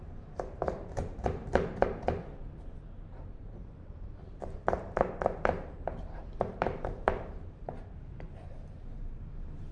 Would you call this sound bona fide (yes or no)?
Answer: no